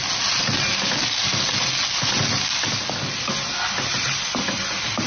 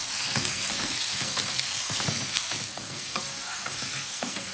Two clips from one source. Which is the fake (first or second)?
second